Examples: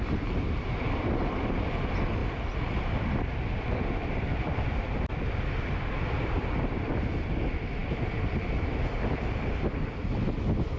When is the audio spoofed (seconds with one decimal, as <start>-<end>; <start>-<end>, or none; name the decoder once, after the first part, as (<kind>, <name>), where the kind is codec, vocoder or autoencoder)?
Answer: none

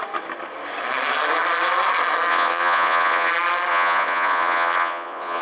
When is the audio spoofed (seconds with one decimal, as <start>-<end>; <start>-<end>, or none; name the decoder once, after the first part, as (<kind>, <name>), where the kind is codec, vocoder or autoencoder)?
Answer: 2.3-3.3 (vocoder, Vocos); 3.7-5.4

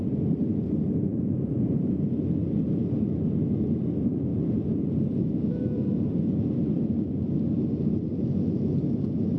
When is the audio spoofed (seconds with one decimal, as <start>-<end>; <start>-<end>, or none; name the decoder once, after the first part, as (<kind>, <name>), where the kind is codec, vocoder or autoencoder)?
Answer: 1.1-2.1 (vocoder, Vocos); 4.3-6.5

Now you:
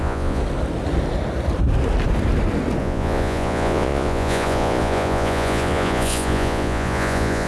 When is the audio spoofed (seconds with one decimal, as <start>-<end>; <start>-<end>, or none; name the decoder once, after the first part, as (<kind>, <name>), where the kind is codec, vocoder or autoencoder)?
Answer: 0.0-0.4 (vocoder, Vocos); 2.8-7.5

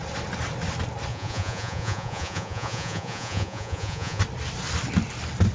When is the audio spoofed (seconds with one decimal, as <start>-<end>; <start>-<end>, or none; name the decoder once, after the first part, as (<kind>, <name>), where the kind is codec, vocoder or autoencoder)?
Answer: 1.1-4.2 (vocoder, Vocos)

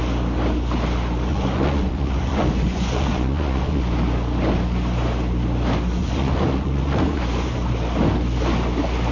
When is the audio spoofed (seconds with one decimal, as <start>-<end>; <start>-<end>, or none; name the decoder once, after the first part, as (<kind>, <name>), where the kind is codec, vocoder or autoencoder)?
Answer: 1.3-3.8 (vocoder, Vocos); 6.0-7.2

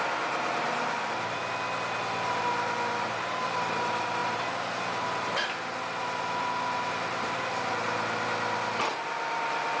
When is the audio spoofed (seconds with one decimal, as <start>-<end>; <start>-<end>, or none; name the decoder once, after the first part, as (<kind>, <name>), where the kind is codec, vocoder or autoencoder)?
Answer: none

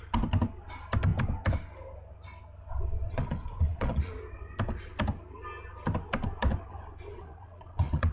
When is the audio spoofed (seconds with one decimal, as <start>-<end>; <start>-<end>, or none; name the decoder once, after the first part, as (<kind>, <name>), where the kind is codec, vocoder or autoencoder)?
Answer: 3.0-4.1 (vocoder, Vocos); 7.1-8.1